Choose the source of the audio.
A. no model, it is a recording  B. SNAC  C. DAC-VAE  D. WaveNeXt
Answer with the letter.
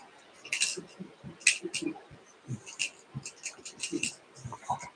A